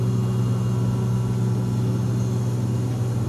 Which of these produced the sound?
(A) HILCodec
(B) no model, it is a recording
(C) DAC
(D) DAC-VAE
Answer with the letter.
B